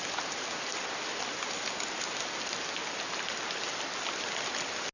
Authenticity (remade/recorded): recorded